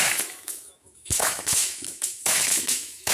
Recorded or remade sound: remade